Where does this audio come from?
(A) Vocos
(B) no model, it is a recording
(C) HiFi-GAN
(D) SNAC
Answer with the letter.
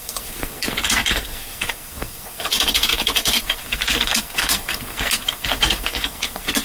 D